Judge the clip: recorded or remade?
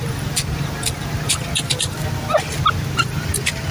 recorded